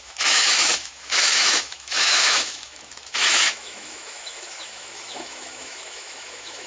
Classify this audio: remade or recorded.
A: remade